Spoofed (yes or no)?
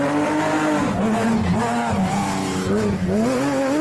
no